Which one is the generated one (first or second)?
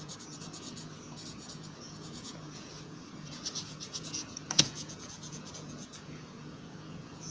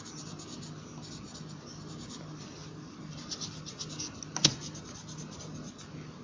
first